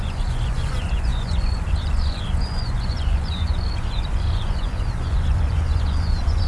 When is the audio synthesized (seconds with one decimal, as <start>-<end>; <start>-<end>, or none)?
0.0-6.5